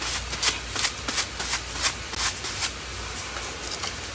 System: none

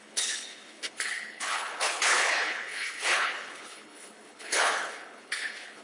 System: codec, HILCodec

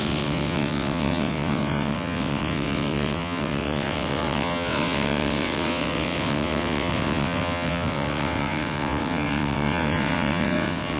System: vocoder, WaveNeXt